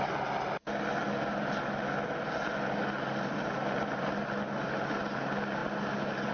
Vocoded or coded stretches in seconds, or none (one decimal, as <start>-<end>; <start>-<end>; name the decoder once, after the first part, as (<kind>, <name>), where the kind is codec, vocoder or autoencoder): none